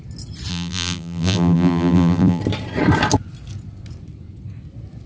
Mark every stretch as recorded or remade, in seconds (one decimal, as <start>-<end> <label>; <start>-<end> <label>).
0.0-0.5 recorded; 0.5-2.4 remade; 2.4-5.1 recorded